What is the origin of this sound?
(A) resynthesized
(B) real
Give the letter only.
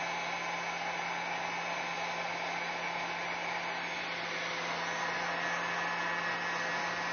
B